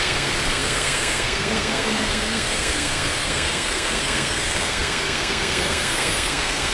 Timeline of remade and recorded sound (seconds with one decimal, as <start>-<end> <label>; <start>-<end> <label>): 0.0-6.7 remade